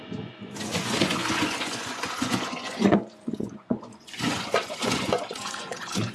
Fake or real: fake